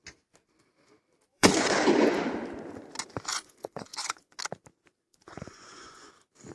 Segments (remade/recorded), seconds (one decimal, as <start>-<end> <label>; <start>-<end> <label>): 0.0-1.3 recorded; 1.3-2.2 remade; 2.2-3.3 recorded; 3.3-4.4 remade; 4.4-5.1 recorded; 5.1-6.1 remade; 6.1-6.5 recorded

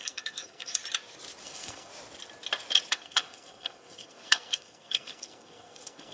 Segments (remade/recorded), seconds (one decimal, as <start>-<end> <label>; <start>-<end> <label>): 0.0-0.8 remade; 0.8-1.4 recorded; 1.4-1.9 remade; 1.9-2.9 recorded; 2.9-6.1 remade

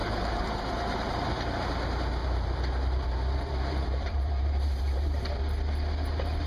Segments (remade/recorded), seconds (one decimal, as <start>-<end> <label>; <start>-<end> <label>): 0.0-1.4 remade; 1.4-2.2 recorded; 2.2-5.4 remade; 5.4-6.5 recorded